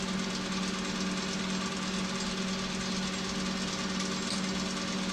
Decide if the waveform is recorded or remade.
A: recorded